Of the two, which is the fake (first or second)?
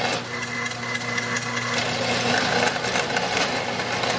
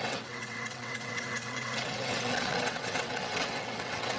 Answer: second